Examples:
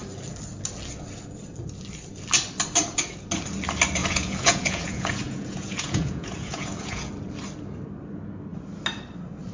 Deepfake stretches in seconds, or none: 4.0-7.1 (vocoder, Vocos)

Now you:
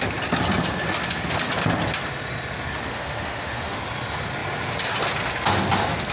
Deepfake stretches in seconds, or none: 2.9-3.8 (autoencoder, DAC-VAE)

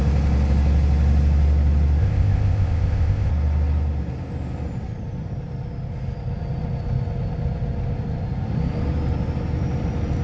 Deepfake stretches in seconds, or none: 2.0-3.3 (codec, ZipCodec)

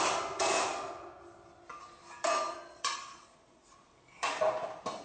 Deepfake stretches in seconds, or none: 2.5-3.6 (vocoder, Vocos)